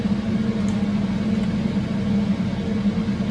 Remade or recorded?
recorded